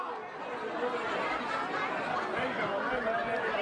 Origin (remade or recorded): recorded